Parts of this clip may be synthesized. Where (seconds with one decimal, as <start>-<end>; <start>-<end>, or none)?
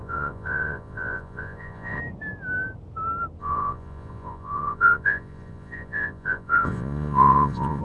0.0-2.0; 3.4-7.8